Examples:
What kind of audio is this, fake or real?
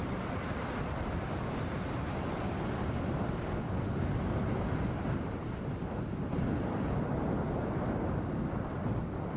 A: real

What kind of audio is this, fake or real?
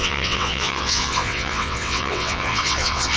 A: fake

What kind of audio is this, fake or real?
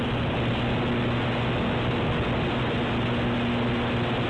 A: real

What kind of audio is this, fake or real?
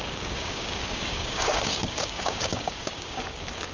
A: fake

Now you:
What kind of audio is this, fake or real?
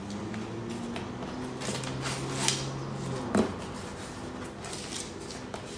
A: real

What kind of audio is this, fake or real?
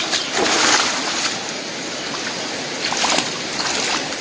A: real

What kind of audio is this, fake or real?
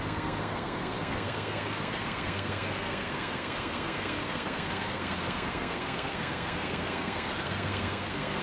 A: fake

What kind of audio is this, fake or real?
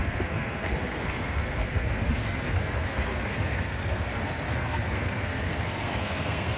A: fake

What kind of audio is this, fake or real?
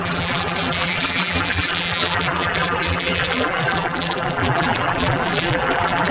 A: fake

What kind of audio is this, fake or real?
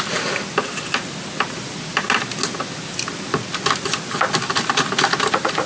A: real